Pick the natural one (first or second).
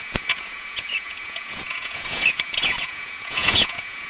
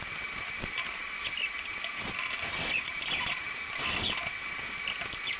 second